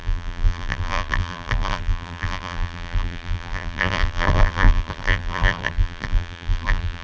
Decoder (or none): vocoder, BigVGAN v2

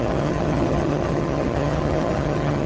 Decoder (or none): vocoder, HiFi-GAN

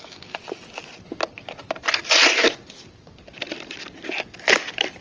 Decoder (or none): none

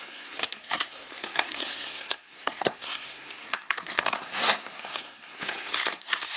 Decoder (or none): codec, SNAC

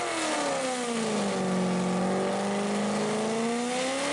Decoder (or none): none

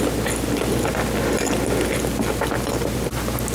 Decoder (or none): none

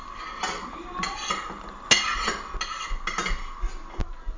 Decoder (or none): none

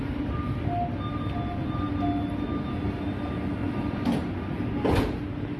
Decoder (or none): none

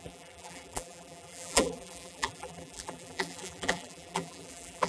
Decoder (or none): vocoder, BigVGAN v2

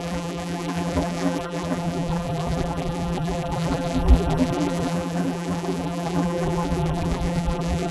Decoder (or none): vocoder, BigVGAN v2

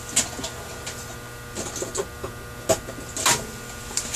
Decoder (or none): none